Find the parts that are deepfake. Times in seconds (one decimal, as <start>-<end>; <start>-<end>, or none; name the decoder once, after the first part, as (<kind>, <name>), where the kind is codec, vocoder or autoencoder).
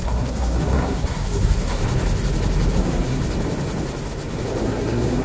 0.0-1.8 (codec, SNAC); 2.7-3.2; 4.6-5.2